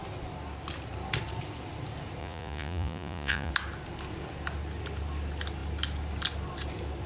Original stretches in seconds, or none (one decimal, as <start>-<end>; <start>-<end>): 0.0-2.2; 3.5-7.1